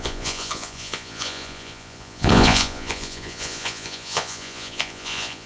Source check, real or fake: fake